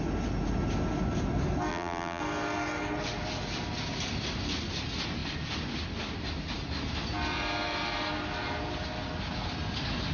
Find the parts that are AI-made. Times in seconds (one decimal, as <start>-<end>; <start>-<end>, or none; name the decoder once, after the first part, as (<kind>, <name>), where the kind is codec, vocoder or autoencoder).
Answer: 1.7-2.2 (vocoder, BigVGAN v2)